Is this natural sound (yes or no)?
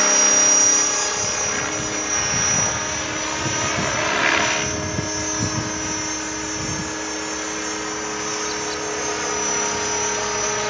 yes